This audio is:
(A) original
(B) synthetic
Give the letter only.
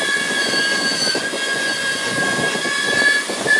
B